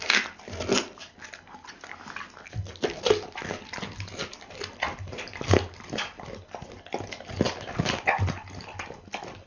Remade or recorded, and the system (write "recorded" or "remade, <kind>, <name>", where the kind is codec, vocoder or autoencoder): recorded